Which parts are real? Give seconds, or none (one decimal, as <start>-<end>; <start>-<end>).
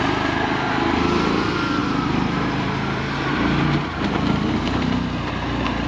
0.0-1.8; 5.3-5.9